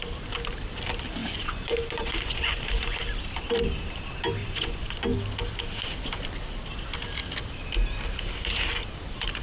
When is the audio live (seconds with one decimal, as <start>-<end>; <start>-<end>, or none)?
0.0-1.2; 3.0-4.4; 5.0-9.4